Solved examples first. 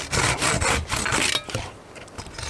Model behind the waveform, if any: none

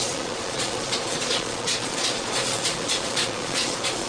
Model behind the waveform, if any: vocoder, Vocos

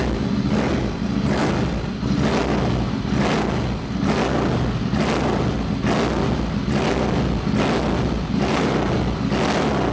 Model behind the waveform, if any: none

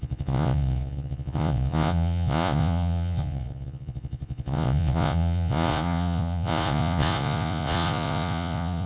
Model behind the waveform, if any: vocoder, Vocos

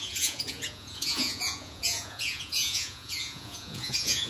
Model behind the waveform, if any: vocoder, Vocos